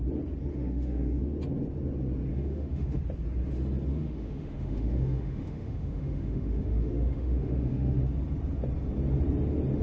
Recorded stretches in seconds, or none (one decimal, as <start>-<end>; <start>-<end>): 0.0-0.5; 1.2-2.3; 3.0-3.9; 8.0-9.8